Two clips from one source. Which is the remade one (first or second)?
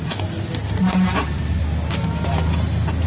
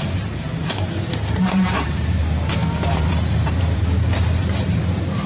second